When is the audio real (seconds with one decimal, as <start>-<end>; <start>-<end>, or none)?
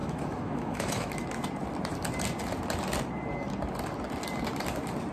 1.1-5.1